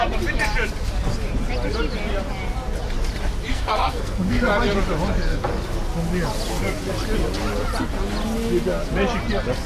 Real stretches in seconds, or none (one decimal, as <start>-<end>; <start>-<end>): 0.0-3.5; 4.5-9.7